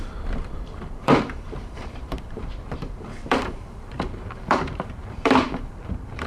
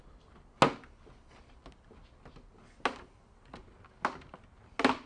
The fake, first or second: first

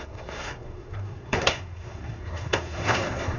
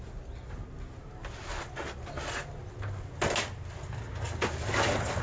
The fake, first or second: first